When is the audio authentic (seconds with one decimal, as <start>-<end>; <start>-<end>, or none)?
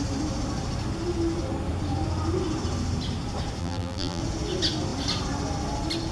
0.0-3.6; 4.2-6.1